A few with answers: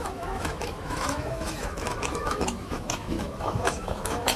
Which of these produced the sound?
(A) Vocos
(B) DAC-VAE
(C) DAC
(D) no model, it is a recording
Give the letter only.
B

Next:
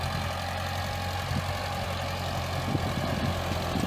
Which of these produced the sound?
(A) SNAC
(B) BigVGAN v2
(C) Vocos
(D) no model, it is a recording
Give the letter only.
D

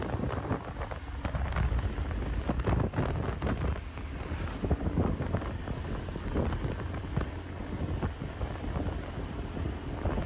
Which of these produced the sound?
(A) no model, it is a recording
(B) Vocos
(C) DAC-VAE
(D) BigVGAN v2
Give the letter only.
A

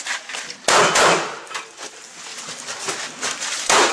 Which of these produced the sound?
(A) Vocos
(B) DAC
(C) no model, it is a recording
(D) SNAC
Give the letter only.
C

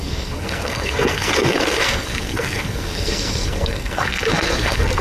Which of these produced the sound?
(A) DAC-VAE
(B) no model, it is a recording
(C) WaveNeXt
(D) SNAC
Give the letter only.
D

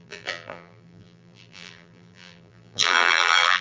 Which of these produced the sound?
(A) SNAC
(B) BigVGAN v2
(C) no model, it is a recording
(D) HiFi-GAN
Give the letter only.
B